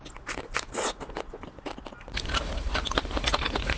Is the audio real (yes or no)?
yes